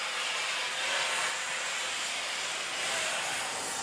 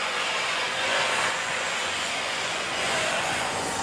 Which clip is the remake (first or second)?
second